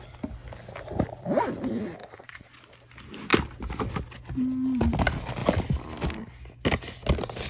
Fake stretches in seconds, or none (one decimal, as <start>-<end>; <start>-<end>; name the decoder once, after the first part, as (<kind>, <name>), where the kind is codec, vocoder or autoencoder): 2.0-2.6 (vocoder, Vocos)